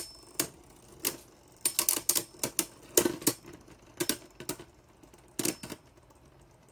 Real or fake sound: real